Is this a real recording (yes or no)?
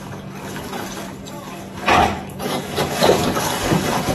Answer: no